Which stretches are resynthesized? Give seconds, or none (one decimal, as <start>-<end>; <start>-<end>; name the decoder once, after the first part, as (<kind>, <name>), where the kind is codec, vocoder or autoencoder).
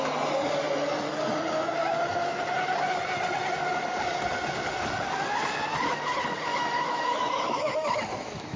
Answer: 6.5-8.6 (autoencoder, DAC-VAE)